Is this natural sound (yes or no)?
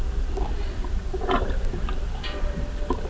no